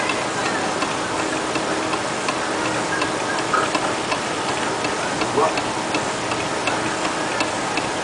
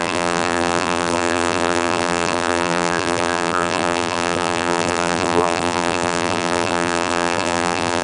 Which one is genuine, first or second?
first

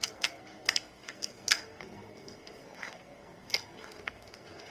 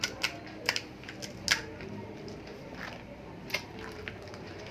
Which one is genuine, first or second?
second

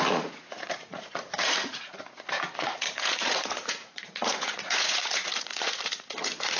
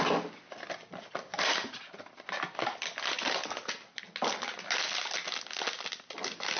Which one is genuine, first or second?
second